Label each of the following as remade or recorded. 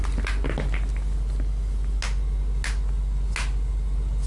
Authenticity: recorded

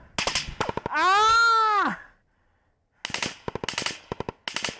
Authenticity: recorded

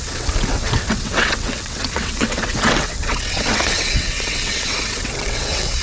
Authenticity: remade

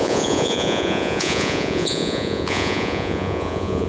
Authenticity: remade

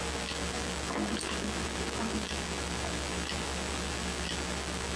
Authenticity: remade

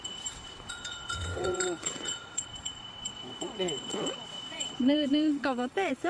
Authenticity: remade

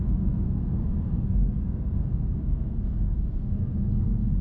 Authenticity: remade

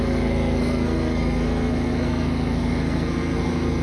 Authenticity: remade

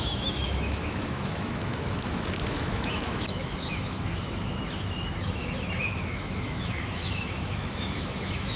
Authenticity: remade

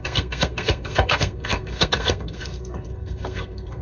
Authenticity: remade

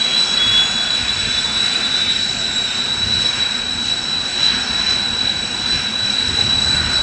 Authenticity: recorded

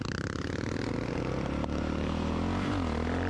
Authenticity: recorded